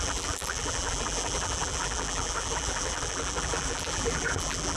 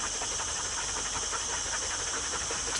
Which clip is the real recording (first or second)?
second